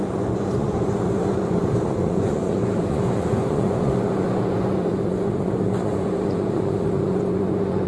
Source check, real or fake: fake